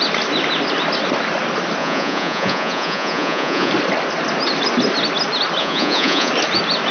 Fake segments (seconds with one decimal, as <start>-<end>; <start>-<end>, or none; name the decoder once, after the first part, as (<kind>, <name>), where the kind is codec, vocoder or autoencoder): 1.8-3.7 (vocoder, Vocos); 5.6-6.3